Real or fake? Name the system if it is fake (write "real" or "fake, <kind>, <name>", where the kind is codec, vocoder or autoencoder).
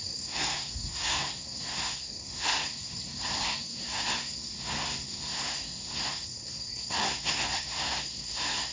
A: fake, codec, SNAC